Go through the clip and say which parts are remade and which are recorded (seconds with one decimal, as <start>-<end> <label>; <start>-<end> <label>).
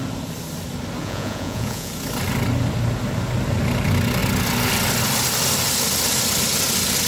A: 0.0-1.0 recorded; 1.0-1.9 remade; 1.9-7.1 recorded